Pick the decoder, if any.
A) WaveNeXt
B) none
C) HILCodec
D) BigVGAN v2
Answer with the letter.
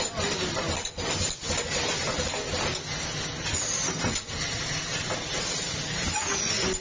B